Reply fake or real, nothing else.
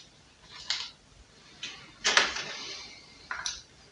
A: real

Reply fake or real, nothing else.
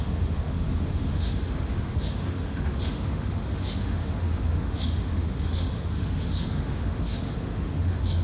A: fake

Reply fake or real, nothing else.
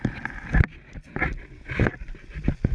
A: real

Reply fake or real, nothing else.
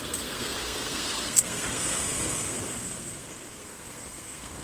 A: fake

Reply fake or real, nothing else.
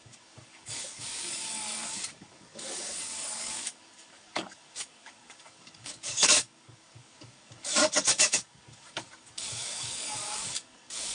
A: fake